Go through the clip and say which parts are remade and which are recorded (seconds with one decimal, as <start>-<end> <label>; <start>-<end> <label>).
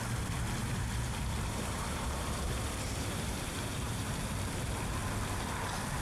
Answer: 0.0-0.6 recorded; 0.6-4.2 remade; 4.2-6.0 recorded